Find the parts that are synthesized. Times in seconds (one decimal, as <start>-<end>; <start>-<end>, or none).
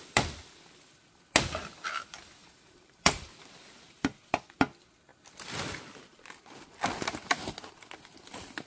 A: 2.4-3.3